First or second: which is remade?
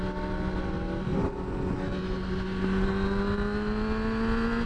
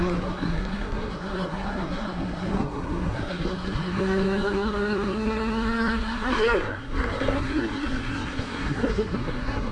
second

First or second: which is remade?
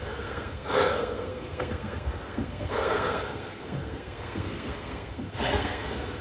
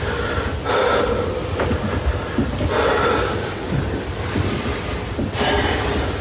first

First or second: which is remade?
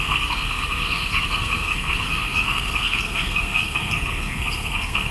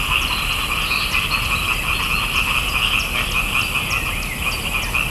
first